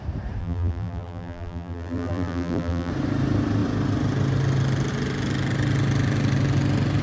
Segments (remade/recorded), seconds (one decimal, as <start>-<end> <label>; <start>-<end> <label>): 0.0-0.4 recorded; 0.4-2.9 remade; 2.9-7.0 recorded